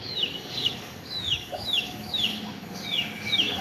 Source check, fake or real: fake